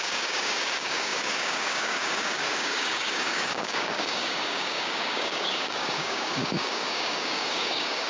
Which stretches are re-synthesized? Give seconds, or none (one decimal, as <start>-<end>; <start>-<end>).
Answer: 0.0-8.1